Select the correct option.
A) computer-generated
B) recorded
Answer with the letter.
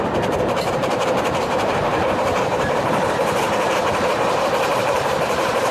A